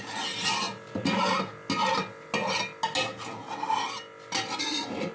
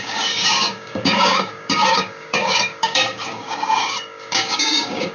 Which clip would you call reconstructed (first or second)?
second